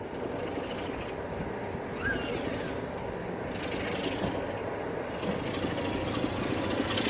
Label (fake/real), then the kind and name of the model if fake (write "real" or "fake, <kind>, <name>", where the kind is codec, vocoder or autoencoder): real